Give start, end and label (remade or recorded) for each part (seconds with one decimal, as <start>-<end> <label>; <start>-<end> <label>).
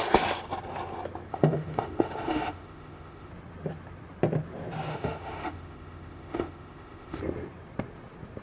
0.0-1.3 recorded; 1.3-3.3 remade; 3.3-4.9 recorded; 4.9-7.2 remade; 7.2-8.4 recorded